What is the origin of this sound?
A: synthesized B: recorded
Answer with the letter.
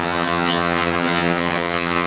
A